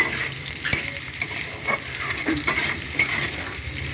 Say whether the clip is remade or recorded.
remade